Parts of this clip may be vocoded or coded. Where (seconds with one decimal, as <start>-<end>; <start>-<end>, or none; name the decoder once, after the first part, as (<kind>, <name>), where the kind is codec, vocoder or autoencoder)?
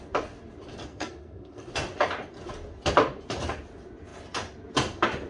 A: 0.9-1.7 (codec, SNAC)